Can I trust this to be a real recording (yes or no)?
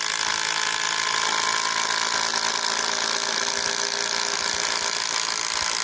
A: yes